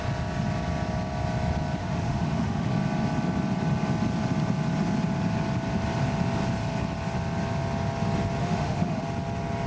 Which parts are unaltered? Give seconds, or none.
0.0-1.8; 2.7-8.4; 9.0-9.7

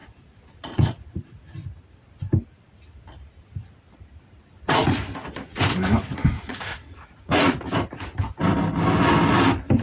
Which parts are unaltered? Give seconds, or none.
1.4-6.5; 7.6-9.8

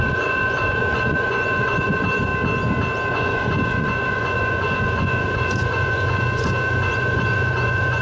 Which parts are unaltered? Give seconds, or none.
2.3-3.1

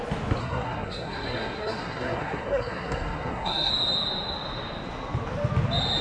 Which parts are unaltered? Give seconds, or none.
0.0-0.4; 3.7-6.0

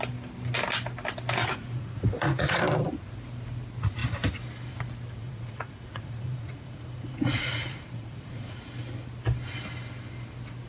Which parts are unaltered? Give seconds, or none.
0.0-1.4; 2.6-5.2; 8.6-10.7